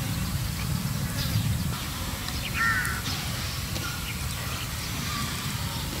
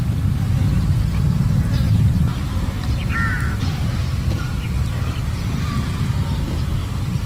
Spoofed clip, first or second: first